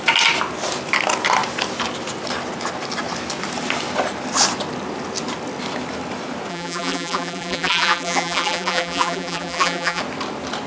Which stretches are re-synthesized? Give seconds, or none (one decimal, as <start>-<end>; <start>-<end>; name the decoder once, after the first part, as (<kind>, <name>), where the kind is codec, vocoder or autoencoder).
6.5-10.0 (vocoder, BigVGAN v2)